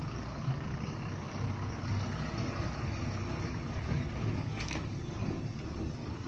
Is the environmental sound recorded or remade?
remade